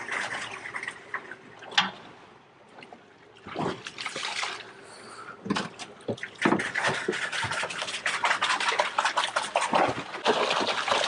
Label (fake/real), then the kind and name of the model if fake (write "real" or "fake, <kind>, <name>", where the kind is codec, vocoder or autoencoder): real